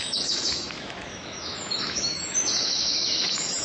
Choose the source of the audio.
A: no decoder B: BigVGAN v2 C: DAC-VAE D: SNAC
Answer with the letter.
C